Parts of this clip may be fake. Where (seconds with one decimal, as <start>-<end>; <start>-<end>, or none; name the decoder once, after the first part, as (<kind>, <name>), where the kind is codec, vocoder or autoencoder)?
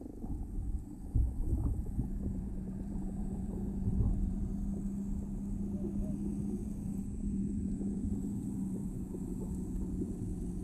1.5-4.5 (vocoder, Vocos); 6.6-8.4; 8.8-10.1